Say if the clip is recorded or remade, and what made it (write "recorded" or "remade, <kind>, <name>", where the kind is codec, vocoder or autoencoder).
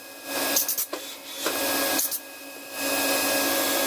recorded